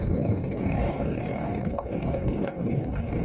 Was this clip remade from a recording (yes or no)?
yes